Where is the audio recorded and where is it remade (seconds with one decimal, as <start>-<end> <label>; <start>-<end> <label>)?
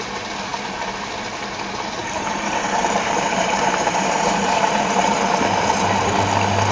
0.0-2.0 recorded; 2.0-6.0 remade; 6.0-6.7 recorded